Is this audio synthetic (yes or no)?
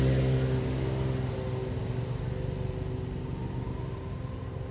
no